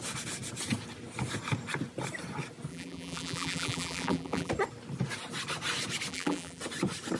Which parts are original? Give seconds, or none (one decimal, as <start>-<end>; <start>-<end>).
0.0-2.7; 4.5-6.1; 6.6-7.2